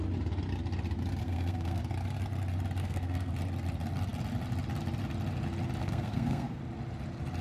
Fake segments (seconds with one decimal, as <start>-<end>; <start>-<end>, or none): 1.2-1.8; 2.8-3.3; 5.8-6.6